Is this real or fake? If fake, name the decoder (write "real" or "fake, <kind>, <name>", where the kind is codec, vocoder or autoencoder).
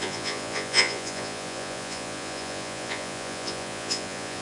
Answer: fake, vocoder, Vocos